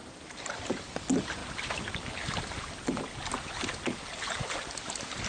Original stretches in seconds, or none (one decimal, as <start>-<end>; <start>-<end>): 0.6-5.3